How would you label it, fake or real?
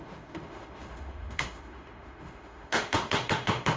fake